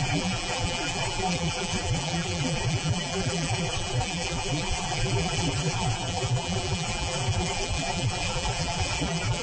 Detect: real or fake fake